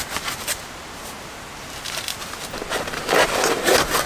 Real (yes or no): yes